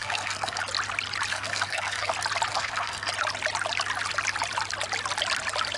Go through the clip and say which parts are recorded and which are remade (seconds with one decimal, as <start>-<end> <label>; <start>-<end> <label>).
0.0-0.6 remade; 0.6-1.3 recorded; 1.3-2.1 remade; 2.1-2.5 recorded; 2.5-3.1 remade; 3.1-5.8 recorded